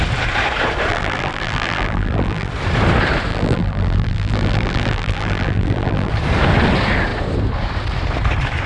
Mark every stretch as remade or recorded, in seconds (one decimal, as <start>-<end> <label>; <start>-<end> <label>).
0.0-0.9 recorded; 0.9-2.5 remade; 2.5-3.3 recorded; 3.3-6.1 remade; 6.1-8.7 recorded